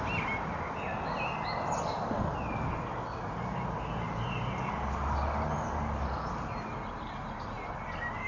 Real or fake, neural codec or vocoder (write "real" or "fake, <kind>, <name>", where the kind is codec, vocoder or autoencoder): real